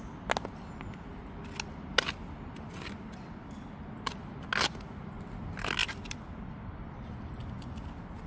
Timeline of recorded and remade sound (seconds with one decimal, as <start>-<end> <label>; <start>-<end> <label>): 0.0-5.8 recorded; 5.8-7.8 remade; 7.8-8.3 recorded